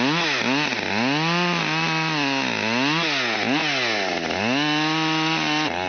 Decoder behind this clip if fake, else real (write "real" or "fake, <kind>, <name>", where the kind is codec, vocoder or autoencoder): real